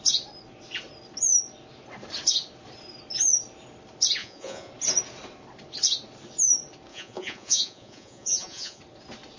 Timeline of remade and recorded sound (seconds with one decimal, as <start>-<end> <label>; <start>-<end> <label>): 0.0-4.2 recorded; 4.2-4.7 remade; 4.7-6.9 recorded; 6.9-8.8 remade; 8.8-9.4 recorded